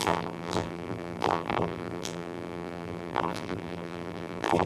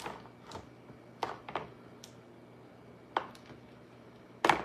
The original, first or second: second